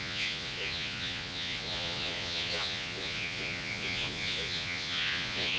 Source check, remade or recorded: remade